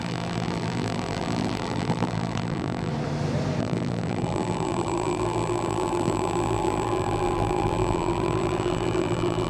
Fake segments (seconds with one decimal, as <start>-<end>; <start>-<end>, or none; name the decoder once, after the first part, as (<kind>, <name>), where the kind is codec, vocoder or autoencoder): 0.0-2.9 (vocoder, BigVGAN v2); 3.6-9.5